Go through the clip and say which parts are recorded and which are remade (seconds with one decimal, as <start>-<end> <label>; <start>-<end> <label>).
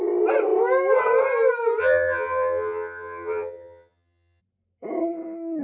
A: 0.0-1.8 recorded; 1.8-4.4 remade; 4.4-5.6 recorded